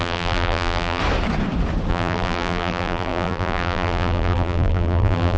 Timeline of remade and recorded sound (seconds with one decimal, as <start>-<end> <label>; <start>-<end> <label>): 0.0-1.0 remade; 1.0-1.9 recorded; 1.9-5.4 remade

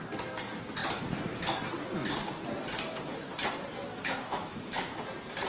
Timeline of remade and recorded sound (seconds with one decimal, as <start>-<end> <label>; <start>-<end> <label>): 0.0-3.9 recorded; 3.9-5.0 remade; 5.0-5.5 recorded

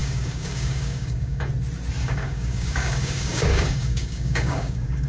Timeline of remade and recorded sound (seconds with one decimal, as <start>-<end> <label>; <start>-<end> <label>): 0.0-1.5 remade; 1.5-2.0 recorded; 2.0-5.1 remade

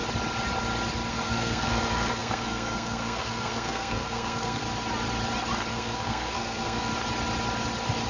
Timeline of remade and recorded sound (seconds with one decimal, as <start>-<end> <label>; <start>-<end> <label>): 0.0-1.1 recorded; 1.1-4.6 remade; 4.6-5.7 recorded; 5.7-6.9 remade; 6.9-8.1 recorded